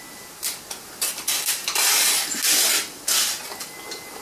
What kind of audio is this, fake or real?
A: real